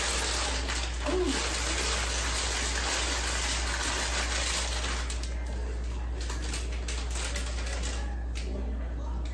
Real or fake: real